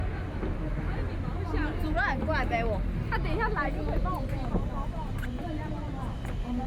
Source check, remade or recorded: recorded